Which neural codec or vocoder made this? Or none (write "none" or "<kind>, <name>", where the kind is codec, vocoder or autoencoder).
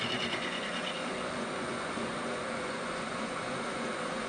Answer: vocoder, Vocos